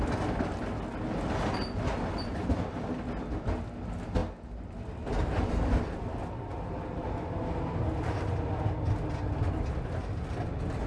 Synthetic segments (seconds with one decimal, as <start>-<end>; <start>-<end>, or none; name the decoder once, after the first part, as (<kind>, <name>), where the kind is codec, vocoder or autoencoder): none